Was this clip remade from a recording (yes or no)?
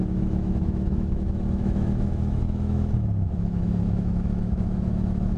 yes